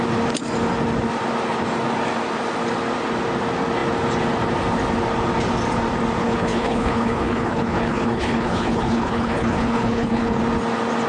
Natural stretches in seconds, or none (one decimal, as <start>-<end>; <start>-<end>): 0.0-6.2; 10.4-11.1